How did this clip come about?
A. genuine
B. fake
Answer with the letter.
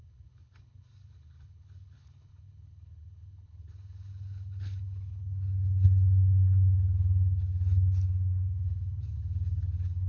B